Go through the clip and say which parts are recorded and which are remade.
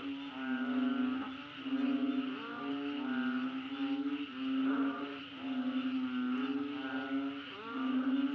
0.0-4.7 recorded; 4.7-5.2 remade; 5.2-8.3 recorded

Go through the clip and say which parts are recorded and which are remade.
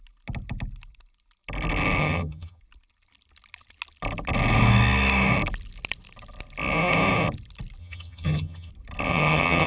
0.0-2.0 recorded; 2.0-2.6 remade; 2.6-7.8 recorded; 7.8-8.7 remade; 8.7-9.1 recorded; 9.1-9.7 remade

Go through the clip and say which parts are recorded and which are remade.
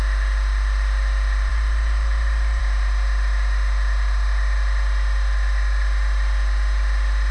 0.0-1.5 recorded; 1.5-2.6 remade; 2.6-7.3 recorded